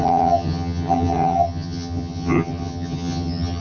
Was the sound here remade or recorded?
remade